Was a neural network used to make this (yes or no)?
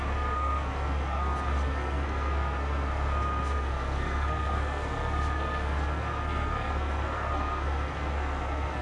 yes